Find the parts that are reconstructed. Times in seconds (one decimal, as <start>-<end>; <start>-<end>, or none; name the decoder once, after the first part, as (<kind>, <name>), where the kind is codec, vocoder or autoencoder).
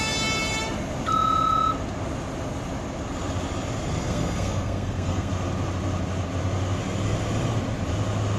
4.0-5.3 (codec, SNAC)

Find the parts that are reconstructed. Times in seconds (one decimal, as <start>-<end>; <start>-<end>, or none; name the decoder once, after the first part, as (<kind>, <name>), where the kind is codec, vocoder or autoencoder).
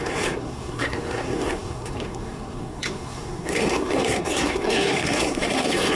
0.0-6.0 (codec, SNAC)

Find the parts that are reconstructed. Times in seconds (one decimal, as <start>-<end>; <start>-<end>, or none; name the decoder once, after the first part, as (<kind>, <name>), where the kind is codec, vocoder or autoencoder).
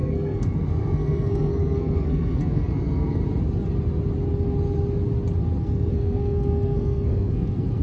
0.0-3.2 (codec, SNAC); 5.6-7.8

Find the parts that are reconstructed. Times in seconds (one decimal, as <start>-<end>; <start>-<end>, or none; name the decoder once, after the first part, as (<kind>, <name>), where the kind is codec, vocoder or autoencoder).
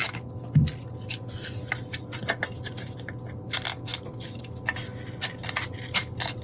none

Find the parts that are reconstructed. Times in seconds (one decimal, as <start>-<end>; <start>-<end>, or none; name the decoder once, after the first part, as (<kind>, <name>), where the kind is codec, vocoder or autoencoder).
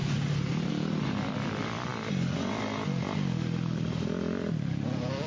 none